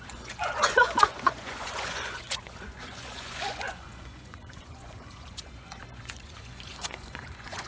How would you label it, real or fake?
fake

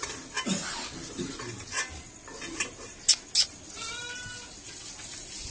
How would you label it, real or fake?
real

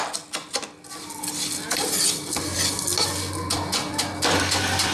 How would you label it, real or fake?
real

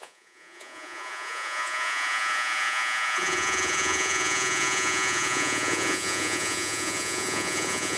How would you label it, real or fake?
fake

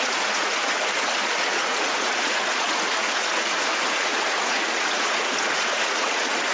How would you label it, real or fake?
fake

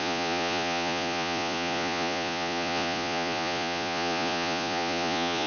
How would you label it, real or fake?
fake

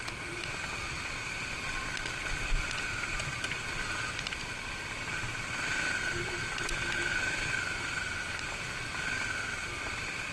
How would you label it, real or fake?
real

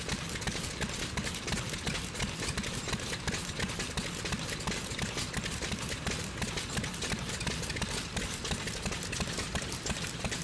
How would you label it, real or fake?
real